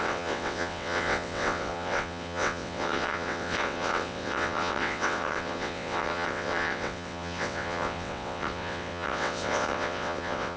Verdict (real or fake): fake